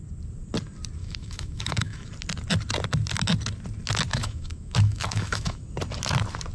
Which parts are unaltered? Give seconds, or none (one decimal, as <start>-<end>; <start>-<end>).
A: 0.0-1.0; 2.1-4.1; 5.6-6.5